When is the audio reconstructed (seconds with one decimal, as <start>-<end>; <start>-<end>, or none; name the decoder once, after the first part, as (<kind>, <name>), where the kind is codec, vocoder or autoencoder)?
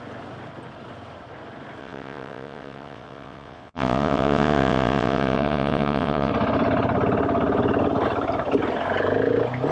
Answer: 1.8-6.3 (vocoder, WaveNeXt)